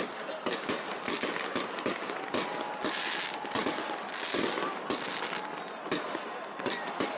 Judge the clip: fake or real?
real